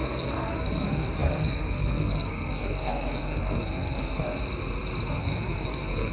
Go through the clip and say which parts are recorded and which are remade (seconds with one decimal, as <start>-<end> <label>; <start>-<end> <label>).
0.0-4.2 remade; 4.2-5.2 recorded; 5.2-6.1 remade